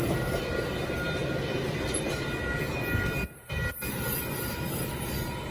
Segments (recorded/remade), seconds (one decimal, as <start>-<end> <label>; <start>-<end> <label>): 0.0-5.5 recorded